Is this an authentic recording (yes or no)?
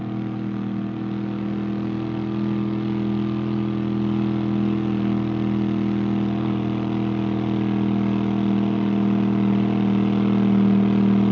yes